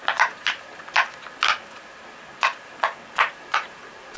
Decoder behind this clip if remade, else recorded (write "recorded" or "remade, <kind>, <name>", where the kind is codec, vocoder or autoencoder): recorded